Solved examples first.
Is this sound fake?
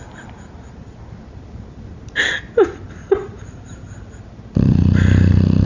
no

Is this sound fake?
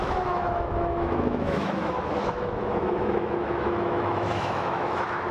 yes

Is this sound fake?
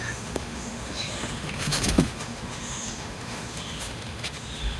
yes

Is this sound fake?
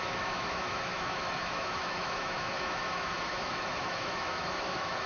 yes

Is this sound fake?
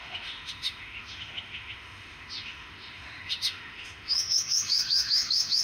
yes